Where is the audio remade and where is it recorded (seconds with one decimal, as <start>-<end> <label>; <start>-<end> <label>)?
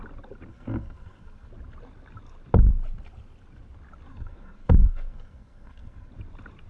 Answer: 0.0-0.5 recorded; 0.5-1.5 remade; 1.5-4.1 recorded; 4.1-6.1 remade; 6.1-6.7 recorded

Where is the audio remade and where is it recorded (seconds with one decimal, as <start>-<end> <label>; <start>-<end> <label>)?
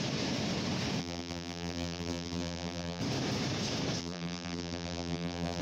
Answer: 0.0-1.0 recorded; 1.0-3.0 remade; 3.0-4.0 recorded; 4.0-5.6 remade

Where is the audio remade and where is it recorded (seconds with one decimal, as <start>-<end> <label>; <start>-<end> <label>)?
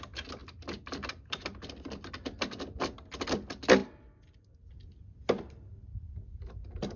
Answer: 0.0-7.0 recorded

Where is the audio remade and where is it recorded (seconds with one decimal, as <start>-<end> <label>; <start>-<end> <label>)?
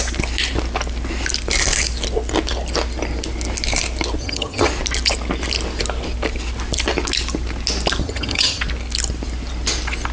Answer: 0.0-4.2 recorded; 4.2-4.7 remade; 4.7-8.0 recorded; 8.0-8.6 remade; 8.6-10.1 recorded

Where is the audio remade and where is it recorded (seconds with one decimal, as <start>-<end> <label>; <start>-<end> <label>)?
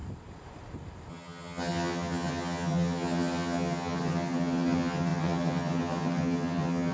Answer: 0.0-1.1 recorded; 1.1-6.9 remade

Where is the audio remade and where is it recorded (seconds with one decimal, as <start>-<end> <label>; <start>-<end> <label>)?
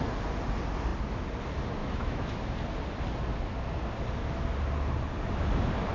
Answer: 0.0-1.8 recorded; 1.8-2.4 remade; 2.4-5.9 recorded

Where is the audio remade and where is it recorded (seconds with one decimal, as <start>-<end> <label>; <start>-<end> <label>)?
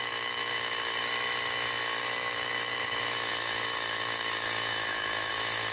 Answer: 0.0-1.0 remade; 1.0-2.0 recorded; 2.0-5.7 remade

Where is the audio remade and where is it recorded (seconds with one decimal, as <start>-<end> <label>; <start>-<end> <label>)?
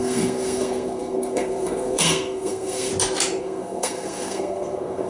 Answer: 0.0-2.9 remade; 2.9-3.4 recorded; 3.4-5.1 remade